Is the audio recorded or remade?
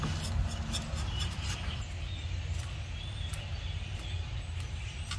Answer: recorded